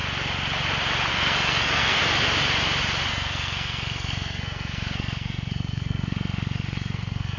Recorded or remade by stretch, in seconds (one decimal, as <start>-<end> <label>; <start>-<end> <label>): 0.0-1.1 recorded; 1.1-2.0 remade; 2.0-3.1 recorded; 3.1-7.4 remade